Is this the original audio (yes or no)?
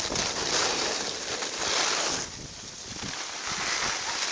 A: yes